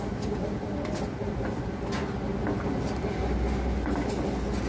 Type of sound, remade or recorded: recorded